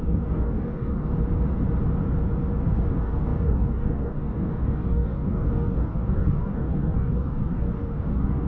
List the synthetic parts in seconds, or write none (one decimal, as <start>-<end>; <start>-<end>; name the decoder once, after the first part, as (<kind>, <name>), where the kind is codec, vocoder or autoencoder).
0.0-1.1 (codec, DAC); 2.6-8.5

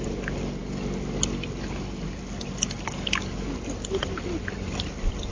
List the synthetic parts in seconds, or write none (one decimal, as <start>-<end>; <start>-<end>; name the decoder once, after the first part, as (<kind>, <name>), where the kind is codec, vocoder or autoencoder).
none

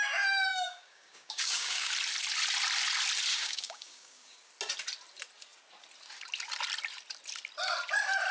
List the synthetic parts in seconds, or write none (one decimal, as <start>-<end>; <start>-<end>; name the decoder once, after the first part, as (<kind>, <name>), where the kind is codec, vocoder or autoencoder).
0.5-1.9 (codec, DAC); 3.3-4.5